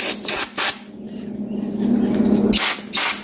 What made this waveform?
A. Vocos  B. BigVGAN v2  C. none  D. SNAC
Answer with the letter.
C